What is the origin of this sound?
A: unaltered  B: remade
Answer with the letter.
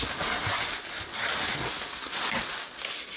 A